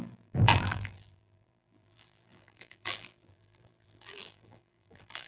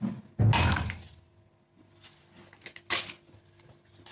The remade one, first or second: first